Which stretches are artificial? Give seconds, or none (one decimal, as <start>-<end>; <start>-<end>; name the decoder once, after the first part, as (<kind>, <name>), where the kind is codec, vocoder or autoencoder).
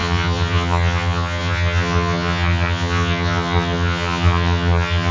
0.0-5.1 (vocoder, HiFi-GAN)